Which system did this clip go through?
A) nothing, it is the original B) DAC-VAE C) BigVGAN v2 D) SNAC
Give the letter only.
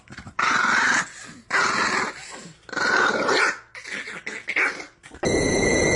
A